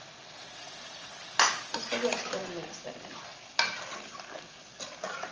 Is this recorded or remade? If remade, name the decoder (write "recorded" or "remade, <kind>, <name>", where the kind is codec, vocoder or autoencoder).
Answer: recorded